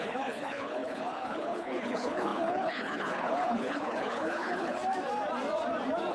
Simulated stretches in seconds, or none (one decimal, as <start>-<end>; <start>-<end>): 0.0-4.8